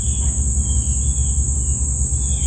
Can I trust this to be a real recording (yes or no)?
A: yes